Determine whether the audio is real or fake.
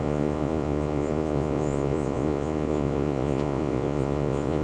fake